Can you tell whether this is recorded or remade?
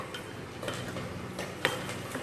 recorded